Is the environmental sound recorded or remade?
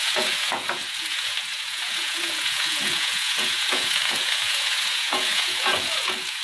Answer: remade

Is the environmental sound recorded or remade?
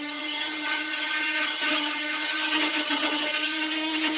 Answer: remade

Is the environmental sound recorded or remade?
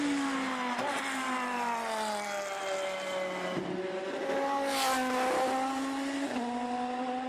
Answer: recorded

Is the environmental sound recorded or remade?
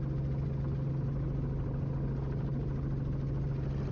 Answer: recorded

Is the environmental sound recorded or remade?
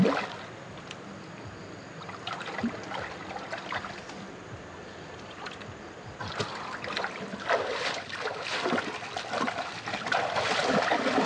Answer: recorded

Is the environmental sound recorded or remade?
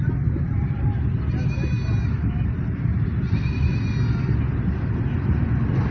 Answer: recorded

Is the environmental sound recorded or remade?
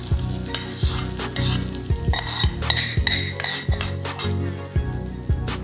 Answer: recorded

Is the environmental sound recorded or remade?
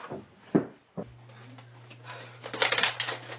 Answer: recorded